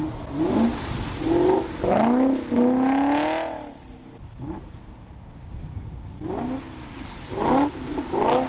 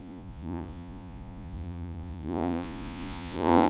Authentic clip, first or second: first